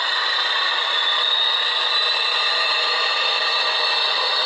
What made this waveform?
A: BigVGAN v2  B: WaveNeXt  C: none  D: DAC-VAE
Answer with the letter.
C